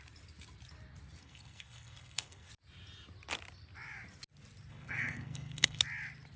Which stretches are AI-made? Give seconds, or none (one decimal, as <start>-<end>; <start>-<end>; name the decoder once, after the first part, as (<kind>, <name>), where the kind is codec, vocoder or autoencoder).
1.2-2.5 (codec, SNAC); 4.7-5.8